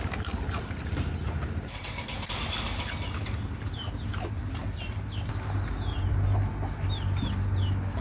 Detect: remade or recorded recorded